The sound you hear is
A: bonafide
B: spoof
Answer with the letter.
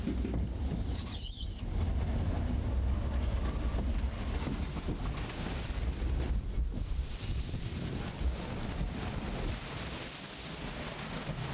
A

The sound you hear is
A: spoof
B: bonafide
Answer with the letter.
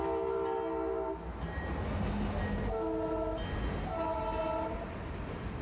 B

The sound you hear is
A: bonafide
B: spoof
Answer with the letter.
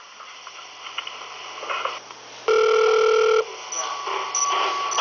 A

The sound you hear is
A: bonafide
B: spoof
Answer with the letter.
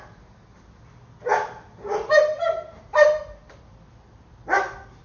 A